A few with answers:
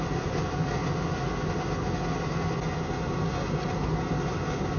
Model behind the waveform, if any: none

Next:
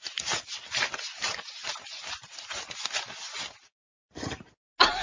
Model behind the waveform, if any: none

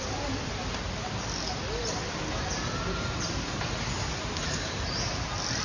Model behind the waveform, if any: none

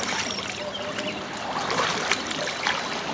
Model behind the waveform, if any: none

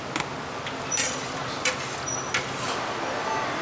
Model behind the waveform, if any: none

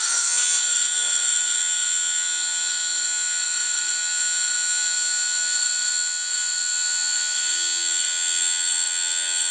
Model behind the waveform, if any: vocoder, WaveNeXt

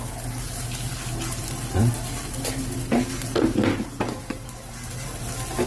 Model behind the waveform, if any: none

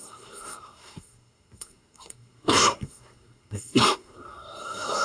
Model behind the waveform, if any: codec, SNAC